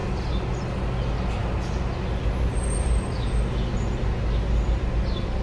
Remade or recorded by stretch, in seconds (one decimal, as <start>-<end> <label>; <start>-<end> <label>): 0.0-5.4 recorded